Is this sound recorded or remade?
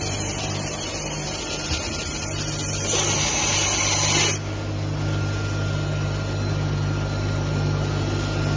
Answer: recorded